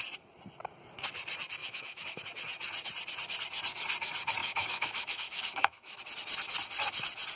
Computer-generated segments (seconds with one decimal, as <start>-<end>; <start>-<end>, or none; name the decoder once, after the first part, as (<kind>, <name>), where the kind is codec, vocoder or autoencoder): 1.6-2.2 (autoencoder, DAC-VAE); 4.4-6.0